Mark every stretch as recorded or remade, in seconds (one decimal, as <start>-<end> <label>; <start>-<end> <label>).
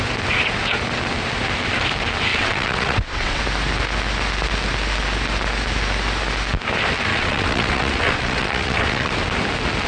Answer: 0.0-2.3 recorded; 2.3-3.4 remade; 3.4-7.1 recorded; 7.1-9.1 remade; 9.1-9.9 recorded